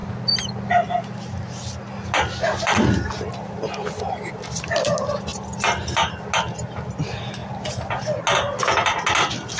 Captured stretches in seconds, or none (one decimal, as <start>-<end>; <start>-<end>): 0.0-9.6